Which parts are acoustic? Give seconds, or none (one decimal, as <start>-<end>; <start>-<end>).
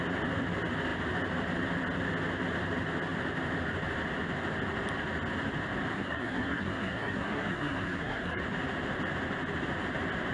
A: 0.0-5.9; 8.4-10.3